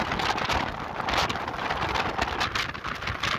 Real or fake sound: real